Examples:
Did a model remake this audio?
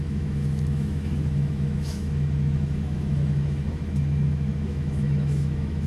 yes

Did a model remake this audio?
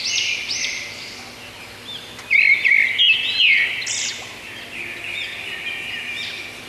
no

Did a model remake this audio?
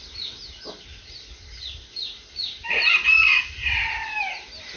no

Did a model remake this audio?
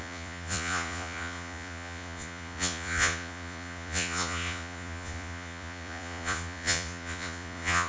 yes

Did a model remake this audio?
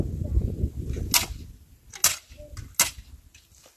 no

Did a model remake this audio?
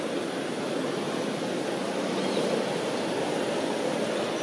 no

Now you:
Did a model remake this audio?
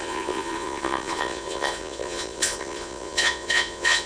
yes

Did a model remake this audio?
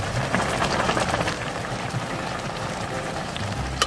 yes